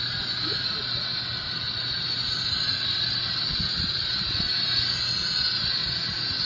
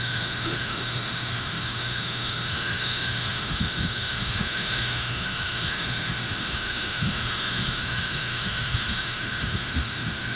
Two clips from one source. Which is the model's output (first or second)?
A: second